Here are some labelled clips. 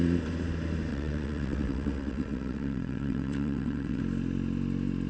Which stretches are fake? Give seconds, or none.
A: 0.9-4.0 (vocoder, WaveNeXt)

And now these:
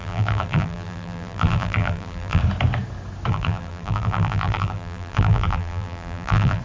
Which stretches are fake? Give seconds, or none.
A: 0.0-2.4 (vocoder, BigVGAN v2); 3.3-6.6